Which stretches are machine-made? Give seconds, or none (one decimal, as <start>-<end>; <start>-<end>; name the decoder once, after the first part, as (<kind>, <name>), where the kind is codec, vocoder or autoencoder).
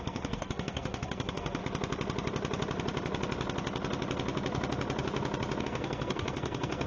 0.0-1.6 (codec, SNAC); 5.6-6.9